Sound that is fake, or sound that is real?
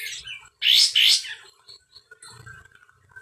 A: real